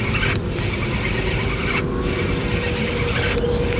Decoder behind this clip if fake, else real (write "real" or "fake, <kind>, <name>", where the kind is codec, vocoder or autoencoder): real